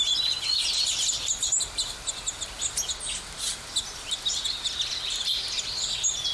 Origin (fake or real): real